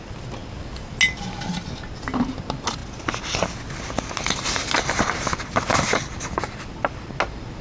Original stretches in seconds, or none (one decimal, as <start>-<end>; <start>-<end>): 0.0-7.6